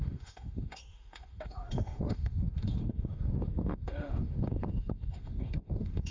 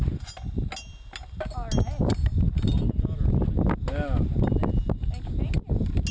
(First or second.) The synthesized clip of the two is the first